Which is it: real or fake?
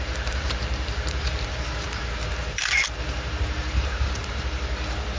fake